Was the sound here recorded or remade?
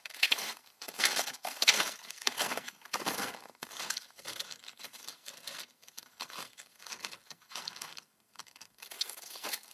remade